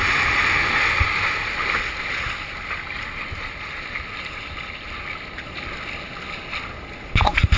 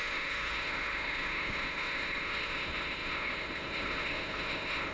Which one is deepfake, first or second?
second